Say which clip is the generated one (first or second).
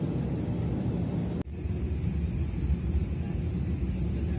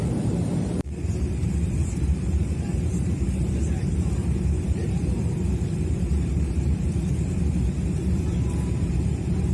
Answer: second